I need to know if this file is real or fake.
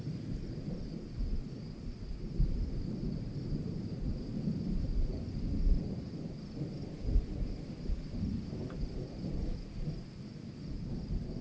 real